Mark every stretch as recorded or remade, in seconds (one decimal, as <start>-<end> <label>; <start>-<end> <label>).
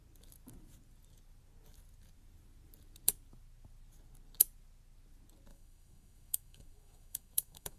0.0-5.5 recorded; 5.5-7.8 remade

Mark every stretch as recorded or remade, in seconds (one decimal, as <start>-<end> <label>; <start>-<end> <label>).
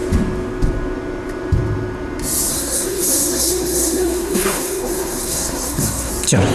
0.0-2.5 recorded; 2.5-6.1 remade; 6.1-6.5 recorded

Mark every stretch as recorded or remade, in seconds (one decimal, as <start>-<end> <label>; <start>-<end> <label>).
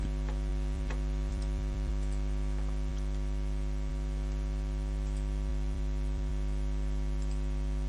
0.0-0.5 recorded; 0.5-1.9 remade; 1.9-5.5 recorded; 5.5-6.3 remade; 6.3-7.9 recorded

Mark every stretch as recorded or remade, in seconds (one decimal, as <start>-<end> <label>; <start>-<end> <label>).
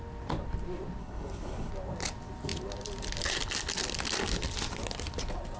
0.0-1.0 recorded; 1.0-1.7 remade; 1.7-5.6 recorded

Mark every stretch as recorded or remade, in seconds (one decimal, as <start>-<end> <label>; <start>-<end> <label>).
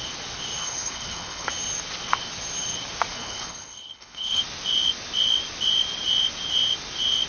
0.0-0.6 recorded; 0.6-1.5 remade; 1.5-3.1 recorded; 3.1-4.4 remade; 4.4-7.3 recorded